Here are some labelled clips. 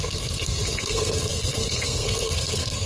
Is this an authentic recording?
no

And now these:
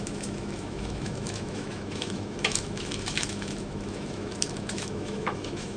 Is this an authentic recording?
no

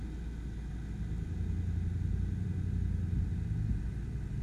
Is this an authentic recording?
yes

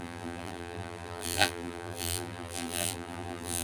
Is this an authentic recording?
no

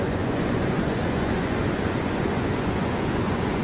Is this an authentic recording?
no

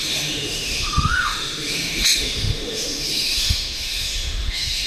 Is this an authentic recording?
no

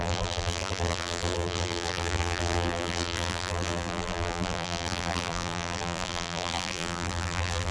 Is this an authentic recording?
no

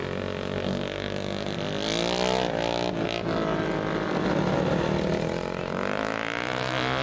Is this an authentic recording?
yes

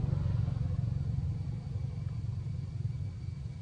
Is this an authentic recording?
yes